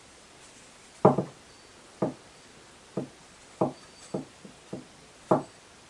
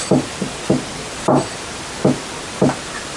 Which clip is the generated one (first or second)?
first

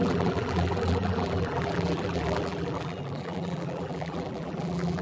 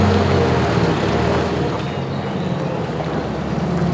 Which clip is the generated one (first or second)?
first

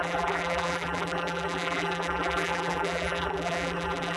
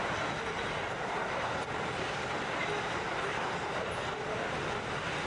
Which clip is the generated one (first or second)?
first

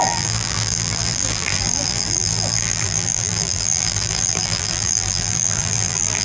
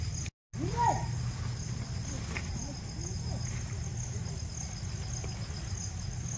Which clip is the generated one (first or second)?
first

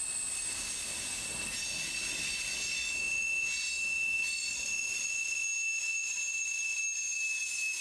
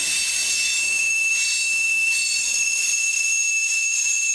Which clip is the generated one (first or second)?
second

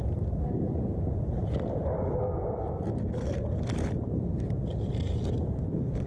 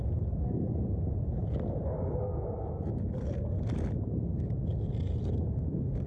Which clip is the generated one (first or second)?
first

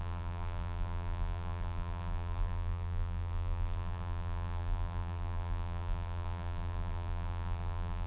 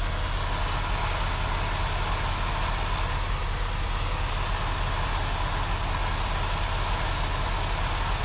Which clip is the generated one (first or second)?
first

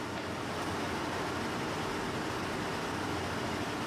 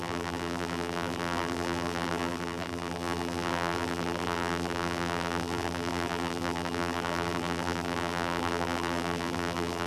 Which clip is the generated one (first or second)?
second